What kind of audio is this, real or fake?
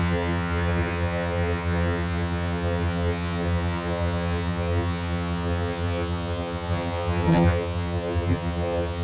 fake